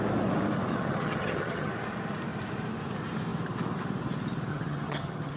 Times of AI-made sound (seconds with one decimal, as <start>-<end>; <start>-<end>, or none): 0.7-1.7; 4.5-5.4